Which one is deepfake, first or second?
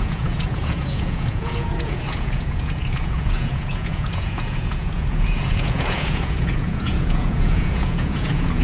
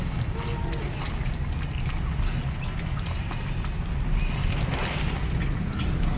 first